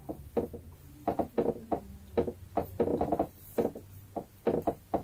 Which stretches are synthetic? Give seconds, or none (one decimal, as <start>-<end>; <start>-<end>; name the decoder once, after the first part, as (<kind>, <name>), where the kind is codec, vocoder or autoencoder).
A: none